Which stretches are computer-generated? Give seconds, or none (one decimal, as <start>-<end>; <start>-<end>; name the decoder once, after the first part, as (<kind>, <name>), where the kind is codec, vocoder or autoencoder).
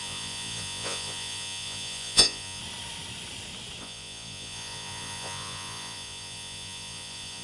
0.0-2.6 (vocoder, Vocos); 3.8-7.4